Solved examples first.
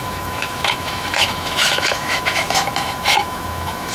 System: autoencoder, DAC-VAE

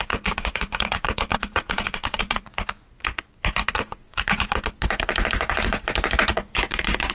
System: vocoder, Vocos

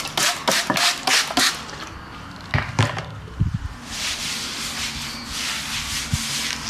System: none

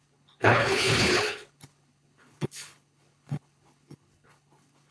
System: codec, HILCodec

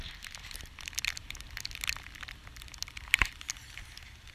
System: none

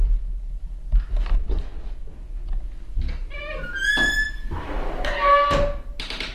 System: none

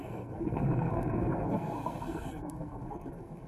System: codec, SNAC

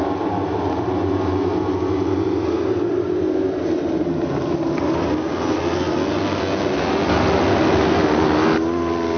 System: none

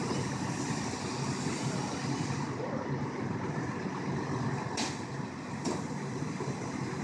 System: none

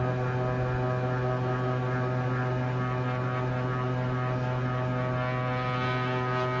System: none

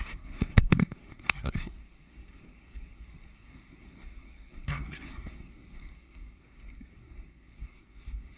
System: codec, SNAC